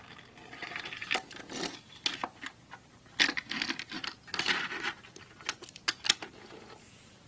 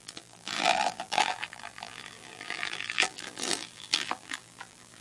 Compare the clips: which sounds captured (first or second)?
first